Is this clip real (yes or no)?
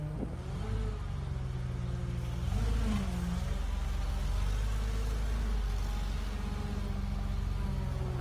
yes